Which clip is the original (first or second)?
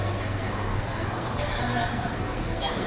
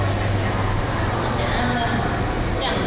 second